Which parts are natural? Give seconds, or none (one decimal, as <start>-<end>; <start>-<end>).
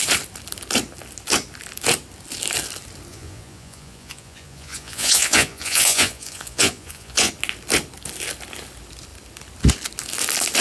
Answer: 0.0-3.1; 7.3-10.6